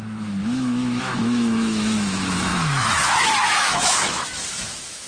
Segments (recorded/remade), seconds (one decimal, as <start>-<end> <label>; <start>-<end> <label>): 0.0-5.1 remade